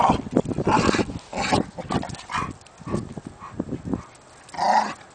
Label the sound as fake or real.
real